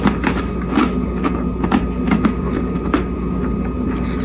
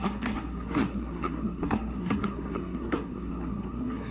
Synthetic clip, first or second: second